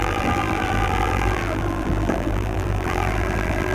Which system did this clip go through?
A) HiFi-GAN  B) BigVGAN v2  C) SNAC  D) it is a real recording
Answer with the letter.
B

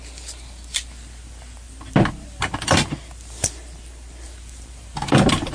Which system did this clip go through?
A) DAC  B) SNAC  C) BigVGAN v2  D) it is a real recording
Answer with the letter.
C